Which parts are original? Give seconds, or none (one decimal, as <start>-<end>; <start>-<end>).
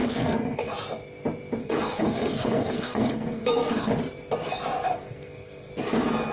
0.7-1.6; 3.9-4.9; 5.7-6.3